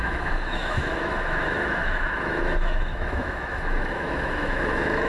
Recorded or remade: remade